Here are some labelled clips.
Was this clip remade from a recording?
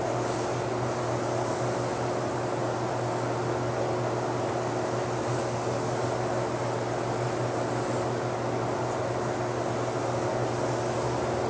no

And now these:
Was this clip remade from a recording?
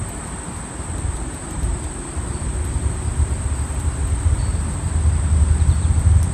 no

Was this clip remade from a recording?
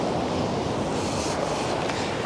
no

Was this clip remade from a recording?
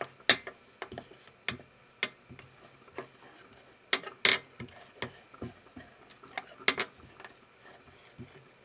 no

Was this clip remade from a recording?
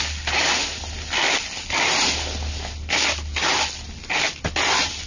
no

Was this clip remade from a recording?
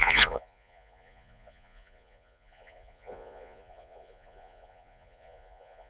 yes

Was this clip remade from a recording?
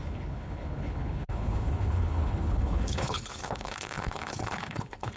yes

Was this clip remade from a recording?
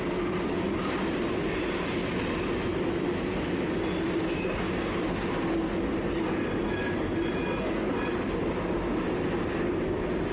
no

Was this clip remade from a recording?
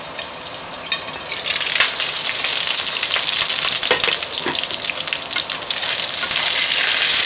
no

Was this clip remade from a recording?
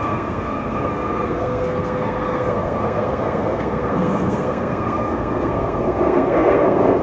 yes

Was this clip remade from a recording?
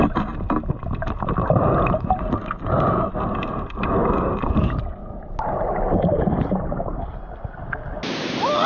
no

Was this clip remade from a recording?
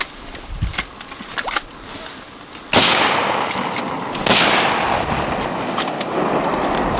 no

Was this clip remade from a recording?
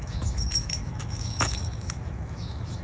yes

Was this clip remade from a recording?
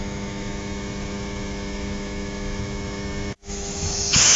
yes